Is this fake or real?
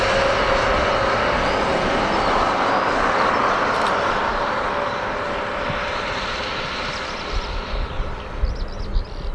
real